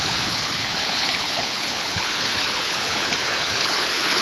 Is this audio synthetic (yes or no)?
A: yes